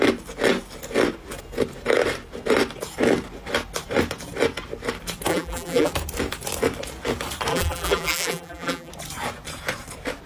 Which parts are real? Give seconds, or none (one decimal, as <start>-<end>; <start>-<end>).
0.0-5.3; 5.9-7.5; 8.9-10.3